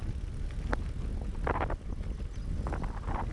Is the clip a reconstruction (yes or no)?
no